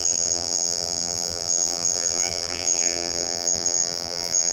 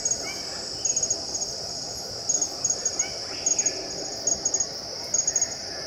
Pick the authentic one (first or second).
second